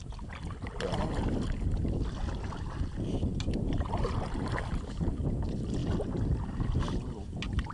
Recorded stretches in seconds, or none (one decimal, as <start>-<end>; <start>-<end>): 0.0-7.7